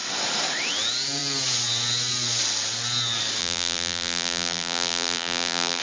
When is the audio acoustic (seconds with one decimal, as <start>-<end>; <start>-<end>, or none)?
0.0-3.4